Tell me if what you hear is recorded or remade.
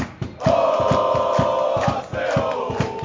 recorded